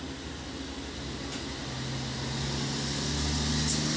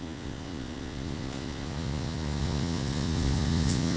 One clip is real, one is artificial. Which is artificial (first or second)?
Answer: second